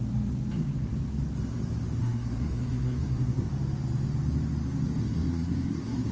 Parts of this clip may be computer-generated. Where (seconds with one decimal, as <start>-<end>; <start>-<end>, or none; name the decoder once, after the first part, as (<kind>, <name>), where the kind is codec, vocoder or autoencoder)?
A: 2.0-3.5 (codec, SNAC); 5.0-6.1